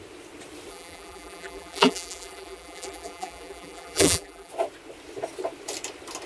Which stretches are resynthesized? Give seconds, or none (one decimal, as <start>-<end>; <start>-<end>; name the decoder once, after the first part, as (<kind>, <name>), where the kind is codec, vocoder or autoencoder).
0.7-4.5 (vocoder, BigVGAN v2)